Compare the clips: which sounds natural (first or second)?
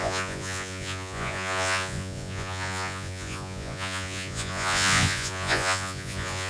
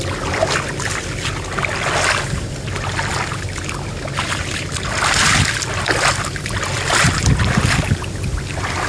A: second